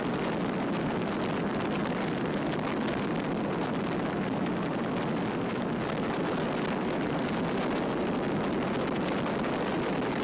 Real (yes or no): yes